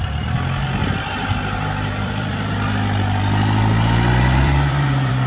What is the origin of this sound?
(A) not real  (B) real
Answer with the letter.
A